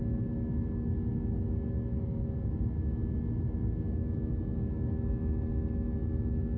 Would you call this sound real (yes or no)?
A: yes